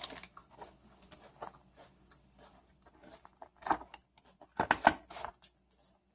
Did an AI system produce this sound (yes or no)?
no